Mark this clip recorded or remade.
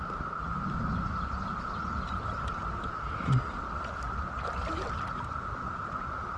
recorded